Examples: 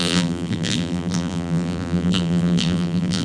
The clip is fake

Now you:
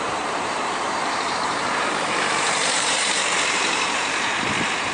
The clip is fake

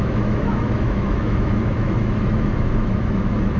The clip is fake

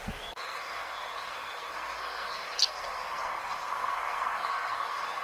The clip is fake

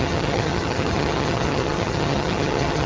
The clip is fake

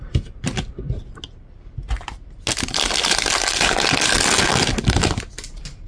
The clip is real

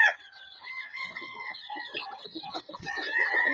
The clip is fake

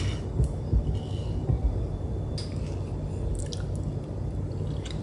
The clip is real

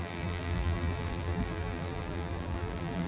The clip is fake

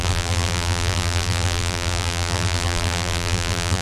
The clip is fake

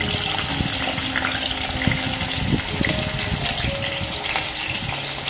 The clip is real